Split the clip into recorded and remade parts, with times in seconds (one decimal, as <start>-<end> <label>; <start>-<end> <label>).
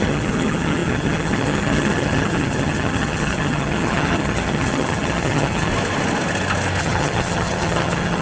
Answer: 0.0-5.7 remade; 5.7-6.8 recorded; 6.8-8.2 remade